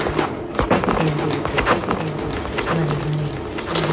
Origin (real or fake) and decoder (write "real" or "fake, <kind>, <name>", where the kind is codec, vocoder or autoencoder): real